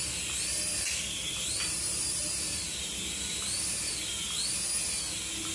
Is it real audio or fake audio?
real